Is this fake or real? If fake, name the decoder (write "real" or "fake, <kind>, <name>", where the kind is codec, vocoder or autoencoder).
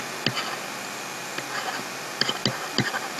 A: real